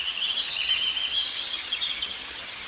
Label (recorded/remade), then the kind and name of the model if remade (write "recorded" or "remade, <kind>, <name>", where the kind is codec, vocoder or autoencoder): remade, vocoder, HiFi-GAN